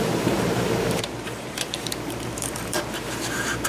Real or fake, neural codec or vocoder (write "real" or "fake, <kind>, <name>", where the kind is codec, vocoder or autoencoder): fake, vocoder, BigVGAN v2